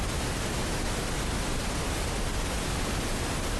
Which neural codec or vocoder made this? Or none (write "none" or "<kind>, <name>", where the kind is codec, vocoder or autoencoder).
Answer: none